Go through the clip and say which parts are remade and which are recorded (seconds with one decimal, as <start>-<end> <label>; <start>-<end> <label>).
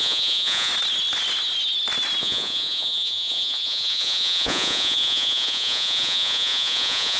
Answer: 0.0-0.7 remade; 0.7-2.2 recorded; 2.2-7.2 remade